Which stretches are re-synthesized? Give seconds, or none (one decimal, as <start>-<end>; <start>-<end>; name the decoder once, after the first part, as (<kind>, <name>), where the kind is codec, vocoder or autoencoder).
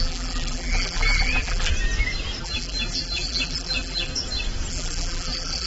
0.0-1.7 (vocoder, BigVGAN v2); 2.4-4.1; 4.7-5.7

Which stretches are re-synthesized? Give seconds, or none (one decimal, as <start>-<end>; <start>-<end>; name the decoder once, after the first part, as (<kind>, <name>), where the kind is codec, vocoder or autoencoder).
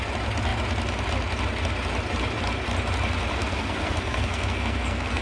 3.3-5.2 (codec, SNAC)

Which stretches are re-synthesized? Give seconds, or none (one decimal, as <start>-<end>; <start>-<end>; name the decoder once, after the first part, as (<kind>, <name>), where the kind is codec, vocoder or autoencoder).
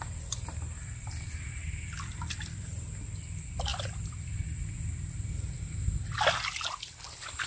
none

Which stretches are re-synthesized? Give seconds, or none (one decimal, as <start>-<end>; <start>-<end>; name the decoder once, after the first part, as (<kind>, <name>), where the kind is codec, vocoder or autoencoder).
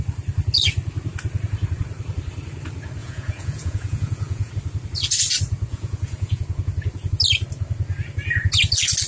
3.0-4.5 (vocoder, Vocos); 5.7-6.4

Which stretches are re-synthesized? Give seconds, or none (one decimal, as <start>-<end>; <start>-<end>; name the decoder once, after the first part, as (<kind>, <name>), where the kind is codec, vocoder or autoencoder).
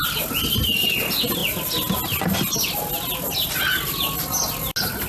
none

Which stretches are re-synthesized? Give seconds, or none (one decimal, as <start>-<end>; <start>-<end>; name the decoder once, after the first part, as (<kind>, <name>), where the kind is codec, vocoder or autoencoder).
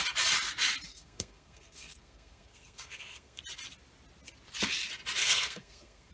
0.9-3.4 (codec, SNAC); 5.2-6.1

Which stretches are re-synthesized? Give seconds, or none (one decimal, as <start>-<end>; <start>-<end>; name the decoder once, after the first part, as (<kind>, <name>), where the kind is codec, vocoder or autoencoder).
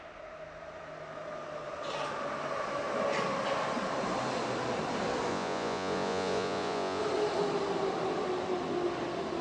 5.3-7.0 (vocoder, Vocos)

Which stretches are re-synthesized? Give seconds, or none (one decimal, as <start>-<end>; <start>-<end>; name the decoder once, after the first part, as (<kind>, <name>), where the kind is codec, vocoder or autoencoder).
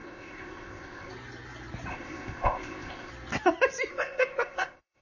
0.0-1.1 (codec, ZipCodec); 1.9-3.1; 3.9-5.0